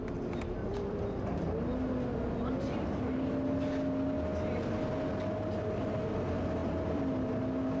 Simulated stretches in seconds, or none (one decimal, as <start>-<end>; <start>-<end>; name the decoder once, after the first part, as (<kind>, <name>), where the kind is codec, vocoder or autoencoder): 0.6-1.4 (vocoder, BigVGAN v2); 6.6-7.1